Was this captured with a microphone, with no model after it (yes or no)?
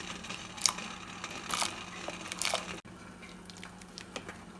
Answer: yes